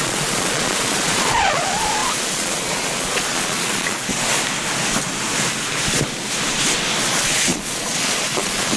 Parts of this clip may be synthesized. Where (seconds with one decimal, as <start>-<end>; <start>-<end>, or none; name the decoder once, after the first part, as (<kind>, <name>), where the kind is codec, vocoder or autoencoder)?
0.0-4.1 (vocoder, Vocos); 7.1-8.8